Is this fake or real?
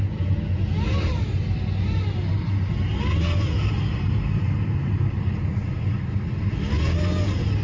real